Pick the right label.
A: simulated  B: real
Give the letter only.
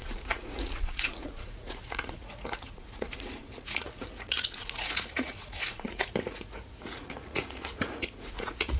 A